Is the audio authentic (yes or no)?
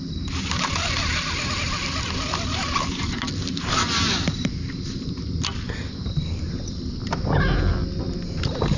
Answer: yes